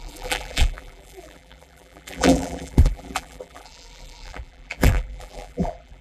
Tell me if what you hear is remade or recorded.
remade